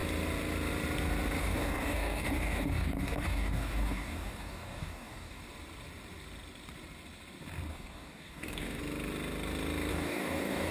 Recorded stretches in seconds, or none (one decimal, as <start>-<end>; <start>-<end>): 0.0-1.4; 5.4-7.7; 8.8-9.9